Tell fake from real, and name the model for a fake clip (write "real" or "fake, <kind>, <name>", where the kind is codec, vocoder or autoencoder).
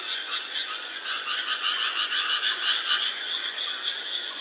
fake, vocoder, Vocos